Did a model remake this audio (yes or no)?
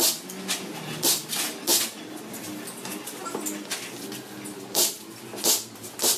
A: no